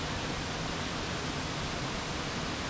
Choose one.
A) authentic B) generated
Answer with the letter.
A